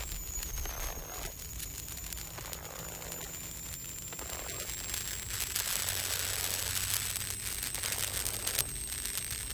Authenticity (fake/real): real